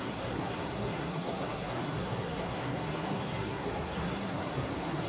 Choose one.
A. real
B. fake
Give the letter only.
B